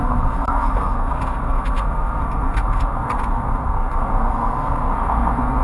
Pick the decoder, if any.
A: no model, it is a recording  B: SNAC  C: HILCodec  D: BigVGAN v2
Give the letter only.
B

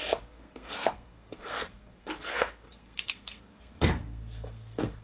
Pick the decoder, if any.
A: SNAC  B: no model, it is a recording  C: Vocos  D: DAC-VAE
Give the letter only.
A